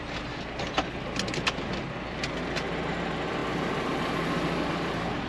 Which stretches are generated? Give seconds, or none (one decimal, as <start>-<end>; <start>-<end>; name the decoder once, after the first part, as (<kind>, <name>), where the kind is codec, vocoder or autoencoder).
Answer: none